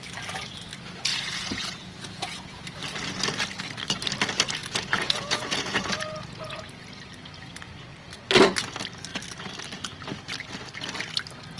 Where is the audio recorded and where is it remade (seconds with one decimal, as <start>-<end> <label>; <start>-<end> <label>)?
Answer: 0.0-1.1 recorded; 1.1-2.6 remade; 2.6-4.6 recorded; 4.6-6.9 remade; 6.9-11.6 recorded